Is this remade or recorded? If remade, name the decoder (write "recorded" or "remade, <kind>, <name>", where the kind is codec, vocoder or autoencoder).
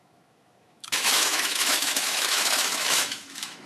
remade, autoencoder, DAC-VAE